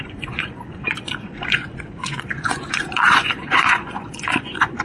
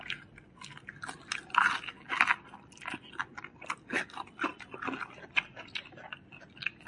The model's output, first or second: first